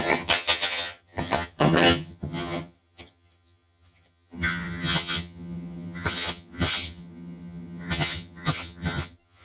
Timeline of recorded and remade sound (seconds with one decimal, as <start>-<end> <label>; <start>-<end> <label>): 0.0-9.4 remade